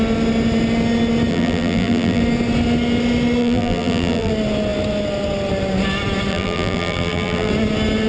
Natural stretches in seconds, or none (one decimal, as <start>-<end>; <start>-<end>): 0.0-1.3; 2.2-3.4; 4.3-6.3; 7.5-8.1